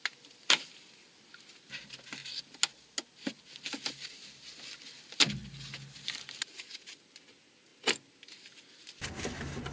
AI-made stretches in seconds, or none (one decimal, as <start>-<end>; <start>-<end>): none